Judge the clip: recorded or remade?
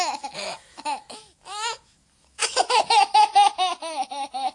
remade